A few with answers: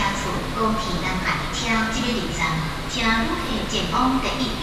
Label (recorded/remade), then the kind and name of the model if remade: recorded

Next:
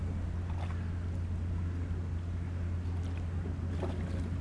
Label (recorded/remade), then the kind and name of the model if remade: recorded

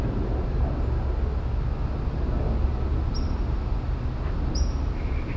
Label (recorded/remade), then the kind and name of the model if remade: recorded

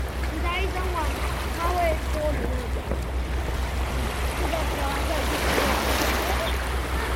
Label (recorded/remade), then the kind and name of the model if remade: recorded